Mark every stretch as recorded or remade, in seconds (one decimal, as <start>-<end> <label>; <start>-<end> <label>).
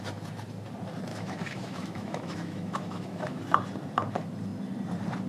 0.0-1.1 recorded; 1.1-3.4 remade; 3.4-5.3 recorded